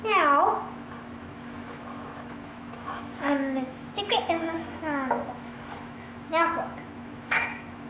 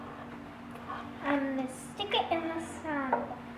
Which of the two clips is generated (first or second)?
first